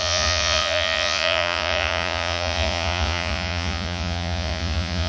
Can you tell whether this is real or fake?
fake